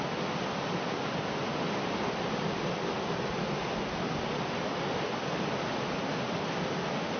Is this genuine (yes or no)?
yes